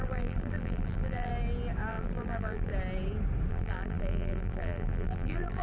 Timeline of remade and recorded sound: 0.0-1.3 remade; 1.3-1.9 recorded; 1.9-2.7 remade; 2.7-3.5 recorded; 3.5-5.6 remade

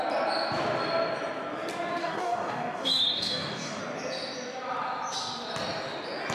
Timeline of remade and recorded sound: 0.0-2.0 recorded; 2.0-3.8 remade; 3.8-6.3 recorded

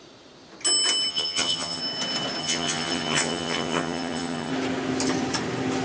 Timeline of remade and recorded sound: 0.0-1.1 recorded; 1.1-1.8 remade; 1.8-2.4 recorded; 2.4-4.5 remade; 4.5-5.8 recorded

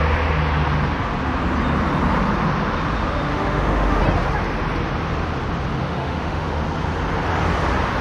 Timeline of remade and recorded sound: 0.0-3.3 recorded; 3.3-4.0 remade; 4.0-5.8 recorded; 5.8-6.6 remade; 6.6-8.0 recorded

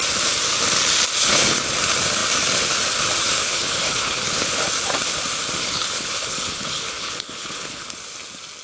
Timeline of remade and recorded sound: 0.0-1.2 recorded; 1.2-1.7 remade; 1.7-3.4 recorded; 3.4-4.6 remade; 4.6-5.6 recorded; 5.6-7.9 remade; 7.9-8.6 recorded

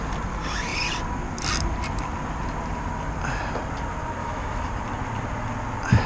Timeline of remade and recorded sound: 0.0-4.2 recorded; 4.2-4.7 remade; 4.7-6.1 recorded

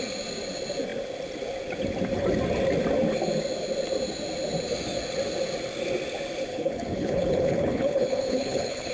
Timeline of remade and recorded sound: 0.0-6.5 recorded; 6.5-8.9 remade